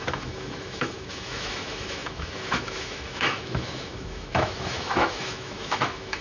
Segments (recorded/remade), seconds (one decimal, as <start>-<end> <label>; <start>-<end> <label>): 0.0-6.2 remade